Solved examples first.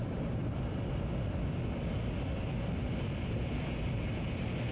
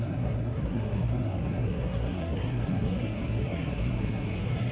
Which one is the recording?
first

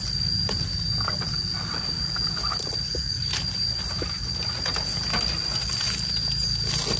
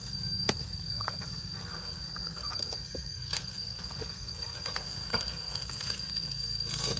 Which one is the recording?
first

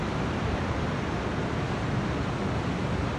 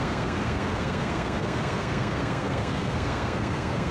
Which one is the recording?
first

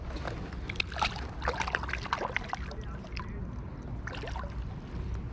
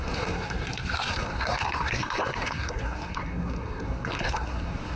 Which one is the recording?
first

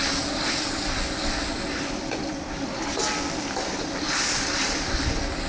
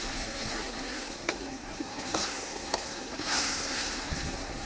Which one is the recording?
first